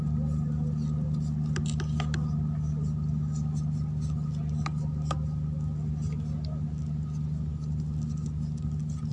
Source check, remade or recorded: recorded